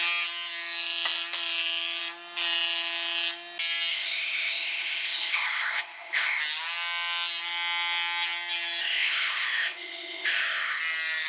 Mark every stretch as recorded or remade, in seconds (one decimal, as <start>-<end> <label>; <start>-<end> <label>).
0.0-3.9 recorded; 3.9-6.4 remade; 6.4-8.8 recorded; 8.8-10.8 remade; 10.8-11.3 recorded